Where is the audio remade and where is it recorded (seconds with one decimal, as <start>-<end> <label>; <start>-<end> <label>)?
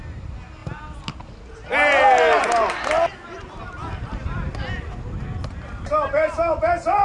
0.0-7.0 recorded